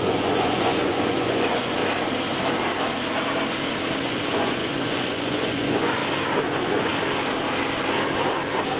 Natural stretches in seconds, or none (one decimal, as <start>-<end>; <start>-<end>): 1.8-4.0; 6.0-6.5; 6.9-8.8